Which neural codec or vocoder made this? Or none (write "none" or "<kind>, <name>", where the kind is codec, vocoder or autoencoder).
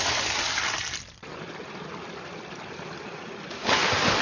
none